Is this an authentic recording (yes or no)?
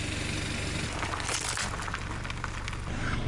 yes